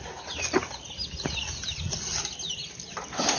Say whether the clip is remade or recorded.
recorded